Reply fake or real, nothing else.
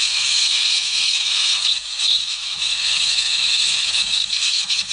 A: fake